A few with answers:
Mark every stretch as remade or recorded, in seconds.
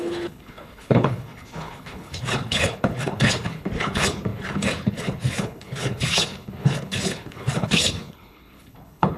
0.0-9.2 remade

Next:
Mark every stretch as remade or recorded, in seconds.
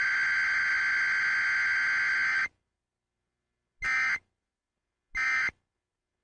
0.0-6.2 recorded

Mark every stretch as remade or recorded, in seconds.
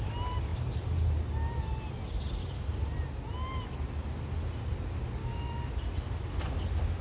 0.0-5.2 recorded; 5.2-5.7 remade; 5.7-7.0 recorded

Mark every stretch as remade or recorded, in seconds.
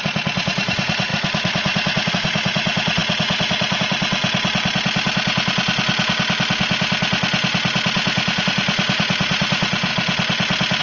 0.0-4.2 remade; 4.2-8.4 recorded; 8.4-9.9 remade; 9.9-10.8 recorded